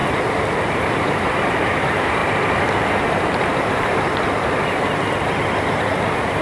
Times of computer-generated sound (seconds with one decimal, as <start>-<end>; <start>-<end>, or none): 0.6-2.2; 3.0-3.9